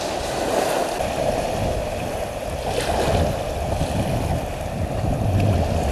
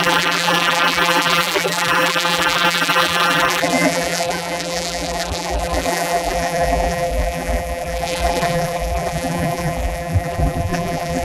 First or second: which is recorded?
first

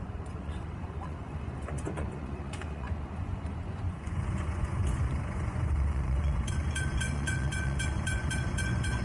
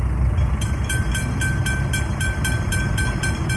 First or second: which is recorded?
second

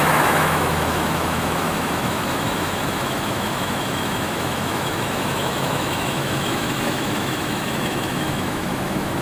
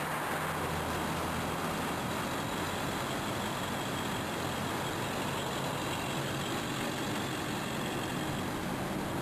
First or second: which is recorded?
second